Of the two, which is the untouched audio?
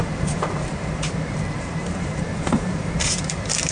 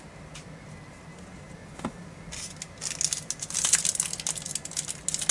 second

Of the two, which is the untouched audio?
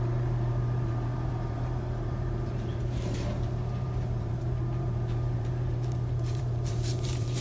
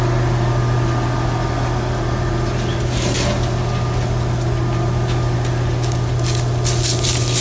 second